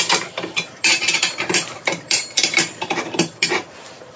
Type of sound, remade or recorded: remade